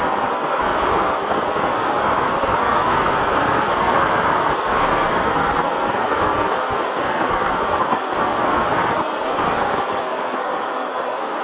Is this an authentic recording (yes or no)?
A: no